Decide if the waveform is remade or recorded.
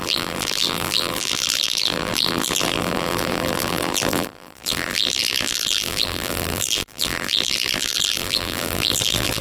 remade